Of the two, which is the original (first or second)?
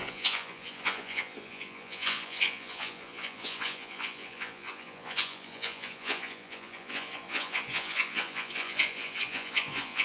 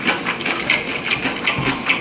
second